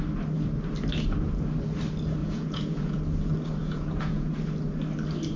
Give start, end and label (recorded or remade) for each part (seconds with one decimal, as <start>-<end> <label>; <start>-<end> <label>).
0.0-2.2 recorded; 2.2-3.0 remade; 3.0-3.6 recorded; 3.6-4.3 remade; 4.3-5.4 recorded